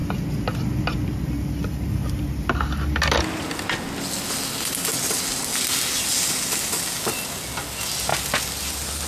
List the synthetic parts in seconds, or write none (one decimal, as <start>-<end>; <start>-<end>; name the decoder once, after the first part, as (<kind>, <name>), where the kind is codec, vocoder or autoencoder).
none

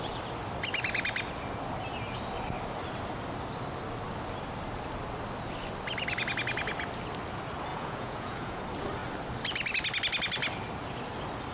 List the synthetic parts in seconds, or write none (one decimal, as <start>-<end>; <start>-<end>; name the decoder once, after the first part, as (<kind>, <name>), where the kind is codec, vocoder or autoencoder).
7.7-8.6 (vocoder, Vocos)

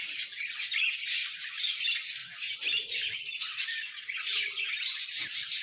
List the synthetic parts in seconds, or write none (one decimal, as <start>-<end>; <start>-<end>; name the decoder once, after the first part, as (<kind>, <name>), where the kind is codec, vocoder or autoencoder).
none

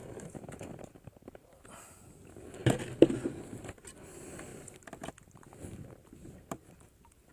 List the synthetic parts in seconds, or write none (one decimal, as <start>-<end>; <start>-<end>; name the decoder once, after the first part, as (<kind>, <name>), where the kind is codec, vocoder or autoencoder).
0.0-0.9 (vocoder, BigVGAN v2)

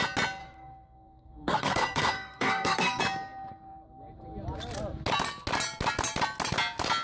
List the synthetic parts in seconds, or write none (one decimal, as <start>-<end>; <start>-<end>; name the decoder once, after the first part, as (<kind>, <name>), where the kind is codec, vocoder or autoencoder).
0.4-3.0 (codec, SNAC)

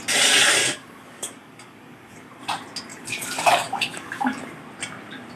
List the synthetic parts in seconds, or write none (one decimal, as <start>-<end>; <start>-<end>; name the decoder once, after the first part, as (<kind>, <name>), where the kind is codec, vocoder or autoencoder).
0.6-2.4 (codec, DAC); 2.9-4.4

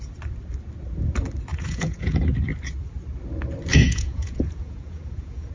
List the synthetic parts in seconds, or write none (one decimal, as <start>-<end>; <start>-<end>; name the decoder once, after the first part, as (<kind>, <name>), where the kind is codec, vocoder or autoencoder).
1.5-2.2 (vocoder, Vocos); 3.7-5.5